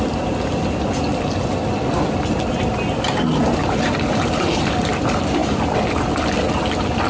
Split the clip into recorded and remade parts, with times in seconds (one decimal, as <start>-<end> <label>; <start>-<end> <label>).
0.0-7.1 recorded